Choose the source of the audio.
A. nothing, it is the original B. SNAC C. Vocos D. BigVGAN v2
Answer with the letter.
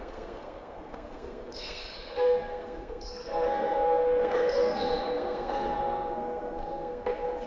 B